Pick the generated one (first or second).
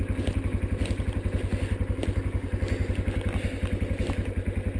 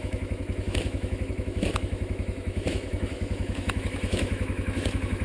second